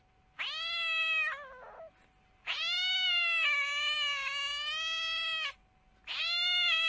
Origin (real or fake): real